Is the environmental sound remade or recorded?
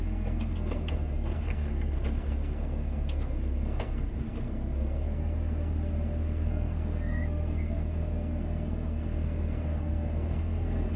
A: remade